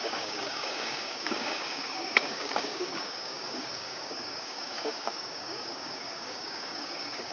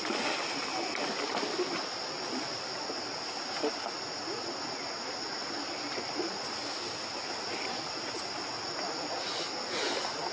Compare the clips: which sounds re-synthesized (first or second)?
first